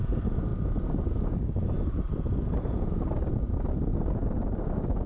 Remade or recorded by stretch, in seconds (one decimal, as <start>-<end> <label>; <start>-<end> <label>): 0.0-5.1 recorded